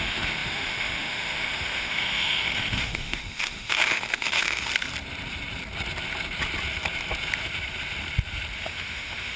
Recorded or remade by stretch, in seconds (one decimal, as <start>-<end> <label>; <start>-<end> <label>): 0.0-4.7 remade; 4.7-8.6 recorded; 8.6-9.4 remade